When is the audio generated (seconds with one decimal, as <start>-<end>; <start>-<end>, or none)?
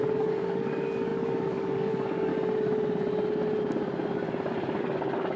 0.0-2.3; 4.8-5.4